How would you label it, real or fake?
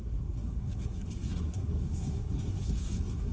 fake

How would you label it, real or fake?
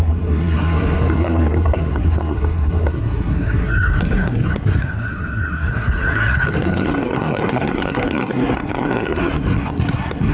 fake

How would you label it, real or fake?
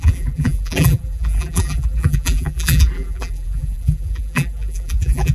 fake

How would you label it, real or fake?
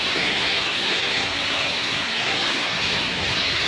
fake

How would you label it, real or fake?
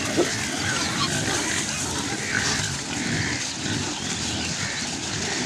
real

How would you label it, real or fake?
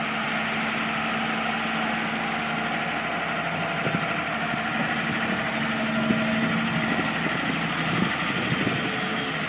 real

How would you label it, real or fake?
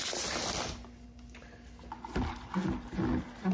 real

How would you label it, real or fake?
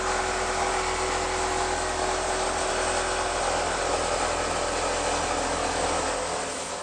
real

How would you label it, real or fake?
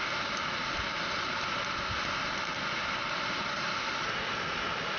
real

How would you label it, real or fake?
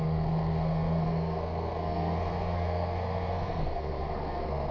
fake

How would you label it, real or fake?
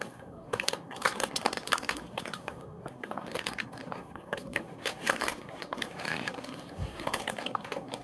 fake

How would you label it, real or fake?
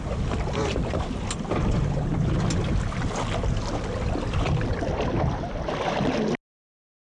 real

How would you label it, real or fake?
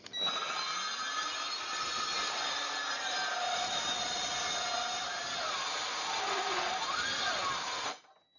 real